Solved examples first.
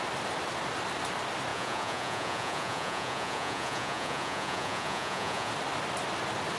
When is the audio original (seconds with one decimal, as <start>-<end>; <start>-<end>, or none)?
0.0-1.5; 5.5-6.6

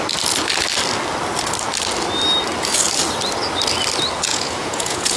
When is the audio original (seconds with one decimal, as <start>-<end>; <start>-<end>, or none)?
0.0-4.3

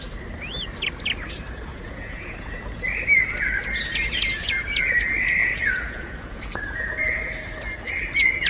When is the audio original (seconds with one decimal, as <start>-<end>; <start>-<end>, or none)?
0.0-1.7; 2.5-5.4; 7.2-8.5

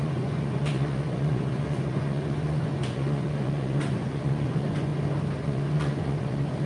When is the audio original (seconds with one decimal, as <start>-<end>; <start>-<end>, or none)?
4.9-5.4